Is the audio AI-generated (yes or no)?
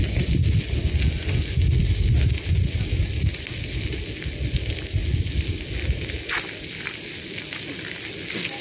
no